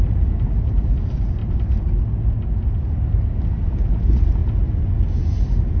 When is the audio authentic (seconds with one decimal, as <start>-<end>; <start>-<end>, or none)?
0.0-5.8